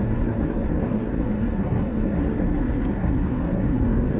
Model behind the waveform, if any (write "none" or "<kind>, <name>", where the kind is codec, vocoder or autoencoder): codec, SNAC